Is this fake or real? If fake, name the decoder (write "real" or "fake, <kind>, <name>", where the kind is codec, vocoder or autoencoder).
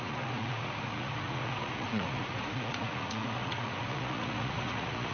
fake, vocoder, Vocos